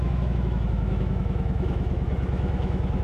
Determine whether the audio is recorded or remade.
remade